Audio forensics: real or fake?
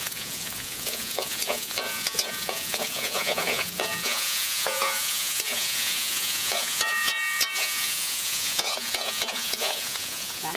fake